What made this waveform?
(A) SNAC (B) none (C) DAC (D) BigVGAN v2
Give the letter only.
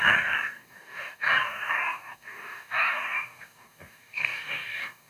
C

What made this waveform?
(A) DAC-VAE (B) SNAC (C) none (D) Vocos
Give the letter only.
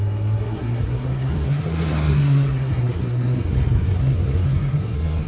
B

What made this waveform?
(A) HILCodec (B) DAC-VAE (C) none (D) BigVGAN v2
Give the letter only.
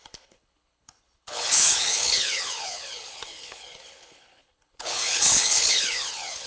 A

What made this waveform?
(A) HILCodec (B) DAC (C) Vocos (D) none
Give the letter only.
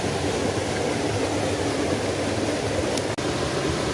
D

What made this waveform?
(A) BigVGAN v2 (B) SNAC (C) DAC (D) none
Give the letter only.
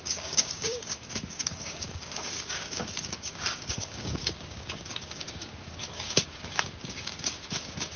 C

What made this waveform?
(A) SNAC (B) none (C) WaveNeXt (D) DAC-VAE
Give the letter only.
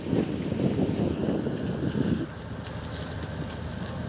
B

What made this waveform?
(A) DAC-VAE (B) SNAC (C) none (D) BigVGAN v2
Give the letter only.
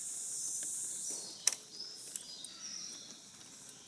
C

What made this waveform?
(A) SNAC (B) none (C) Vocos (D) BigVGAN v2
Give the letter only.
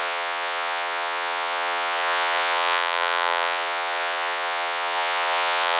C